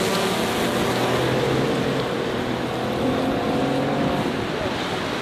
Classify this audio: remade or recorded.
recorded